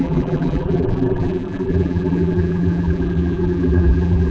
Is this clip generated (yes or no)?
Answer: yes